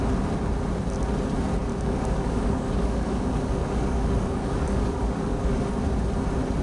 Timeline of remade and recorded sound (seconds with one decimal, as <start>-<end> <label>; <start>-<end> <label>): 0.0-1.7 recorded; 1.7-5.7 remade; 5.7-6.6 recorded